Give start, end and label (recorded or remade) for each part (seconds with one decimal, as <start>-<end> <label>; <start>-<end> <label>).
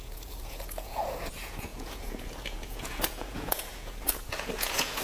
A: 0.0-5.0 remade